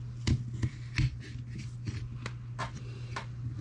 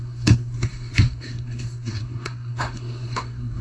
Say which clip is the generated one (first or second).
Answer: second